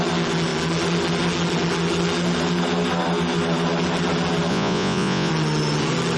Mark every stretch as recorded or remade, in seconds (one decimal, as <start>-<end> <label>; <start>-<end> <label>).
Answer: 0.0-4.5 recorded; 4.5-5.3 remade; 5.3-6.2 recorded